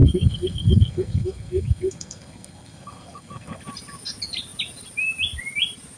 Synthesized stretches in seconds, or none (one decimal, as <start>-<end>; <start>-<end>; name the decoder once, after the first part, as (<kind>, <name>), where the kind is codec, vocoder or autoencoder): 0.0-3.6 (codec, SNAC)